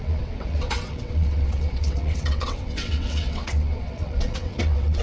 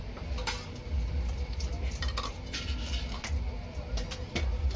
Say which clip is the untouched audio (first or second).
second